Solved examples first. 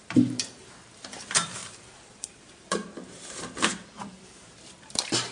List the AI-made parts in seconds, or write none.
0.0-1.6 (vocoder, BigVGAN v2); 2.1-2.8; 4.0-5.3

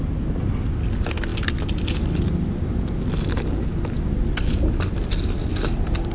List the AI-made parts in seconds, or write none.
none

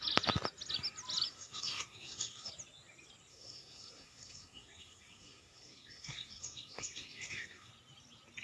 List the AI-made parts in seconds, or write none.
1.3-2.5 (codec, SNAC); 3.3-7.7

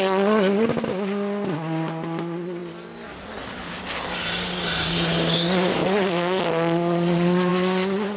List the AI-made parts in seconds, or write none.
5.8-6.4 (vocoder, Vocos)